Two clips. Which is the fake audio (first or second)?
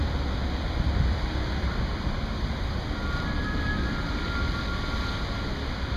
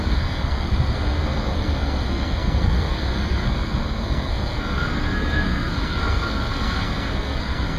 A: second